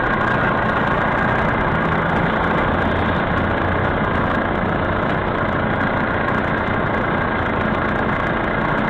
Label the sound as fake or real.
real